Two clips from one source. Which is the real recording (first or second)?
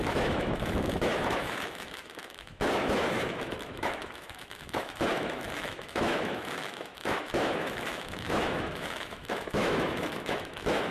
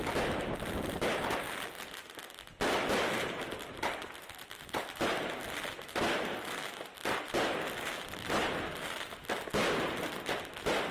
second